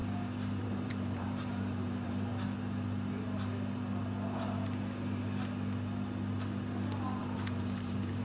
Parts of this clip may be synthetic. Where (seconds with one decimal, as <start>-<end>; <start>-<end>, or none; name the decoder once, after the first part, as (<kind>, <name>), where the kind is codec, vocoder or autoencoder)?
0.6-2.3 (vocoder, BigVGAN v2); 7.2-8.2